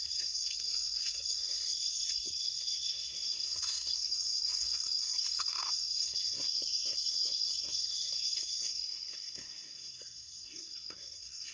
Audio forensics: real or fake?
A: fake